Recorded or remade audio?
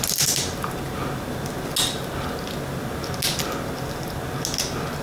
recorded